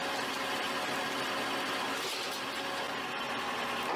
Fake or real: real